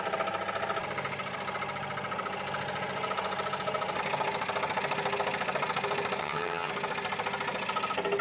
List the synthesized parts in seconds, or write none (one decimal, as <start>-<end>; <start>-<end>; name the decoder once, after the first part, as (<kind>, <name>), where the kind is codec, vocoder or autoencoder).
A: 6.2-6.7 (vocoder, HiFi-GAN)